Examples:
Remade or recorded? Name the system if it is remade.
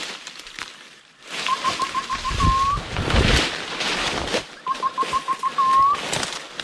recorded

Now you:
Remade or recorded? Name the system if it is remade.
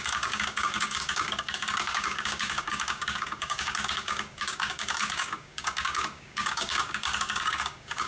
remade, codec, DAC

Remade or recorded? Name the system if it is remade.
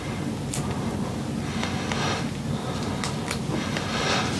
recorded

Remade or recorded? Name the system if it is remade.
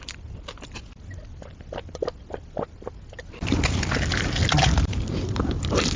recorded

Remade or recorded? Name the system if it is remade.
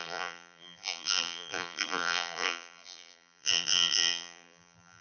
remade, vocoder, BigVGAN v2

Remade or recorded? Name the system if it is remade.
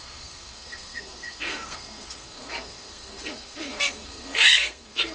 remade, codec, SNAC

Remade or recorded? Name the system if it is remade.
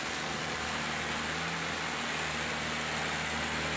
recorded